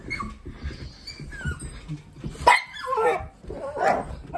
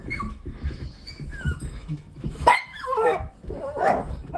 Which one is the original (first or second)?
first